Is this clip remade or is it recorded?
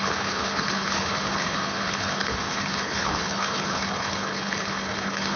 remade